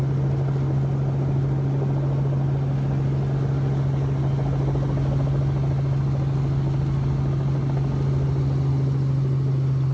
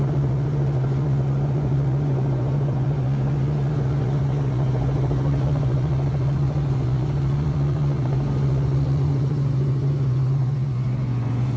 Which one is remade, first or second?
second